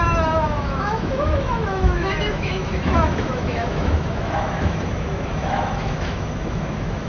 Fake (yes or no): yes